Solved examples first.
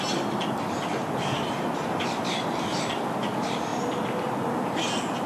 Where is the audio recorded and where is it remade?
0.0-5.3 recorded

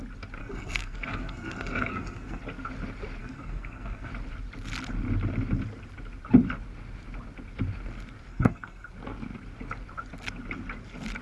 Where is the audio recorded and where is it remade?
0.0-0.4 recorded; 0.4-2.4 remade; 2.4-3.2 recorded; 3.2-4.1 remade; 4.1-8.3 recorded; 8.3-8.9 remade; 8.9-11.2 recorded

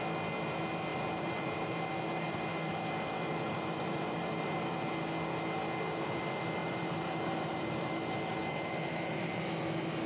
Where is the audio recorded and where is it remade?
0.0-0.9 recorded; 0.9-4.9 remade; 4.9-6.6 recorded; 6.6-7.9 remade; 7.9-8.4 recorded; 8.4-9.3 remade; 9.3-10.1 recorded

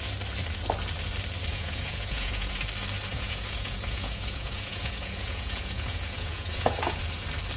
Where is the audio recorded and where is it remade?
0.0-1.5 recorded; 1.5-2.6 remade; 2.6-3.1 recorded; 3.1-7.0 remade; 7.0-7.6 recorded

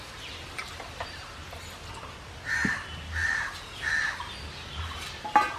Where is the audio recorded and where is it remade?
0.0-5.6 recorded

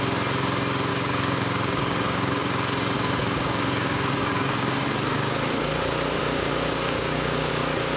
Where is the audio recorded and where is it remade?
0.0-0.9 recorded; 0.9-5.7 remade; 5.7-6.2 recorded; 6.2-7.5 remade; 7.5-8.0 recorded

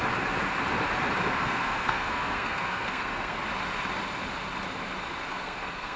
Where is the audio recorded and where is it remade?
0.0-1.2 recorded; 1.2-3.4 remade; 3.4-5.3 recorded; 5.3-6.0 remade

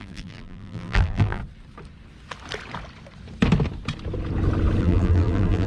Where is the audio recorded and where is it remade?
0.0-1.4 remade; 1.4-4.8 recorded; 4.8-5.7 remade